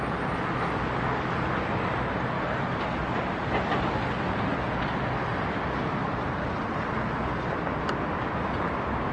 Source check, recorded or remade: recorded